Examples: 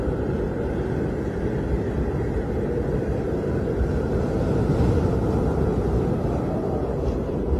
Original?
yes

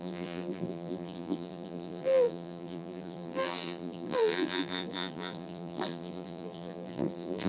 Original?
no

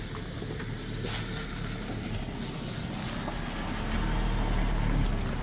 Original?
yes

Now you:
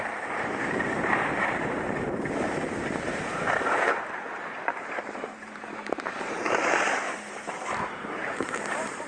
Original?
no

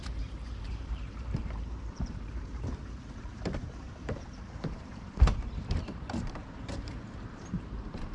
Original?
no